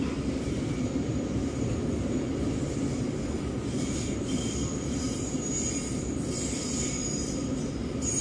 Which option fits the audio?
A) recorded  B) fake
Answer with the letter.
A